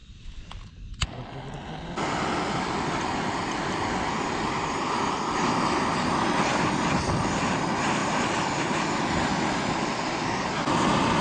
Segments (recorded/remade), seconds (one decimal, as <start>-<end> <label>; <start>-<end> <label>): 0.0-11.2 recorded